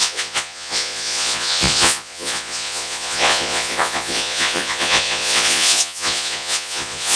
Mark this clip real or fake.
fake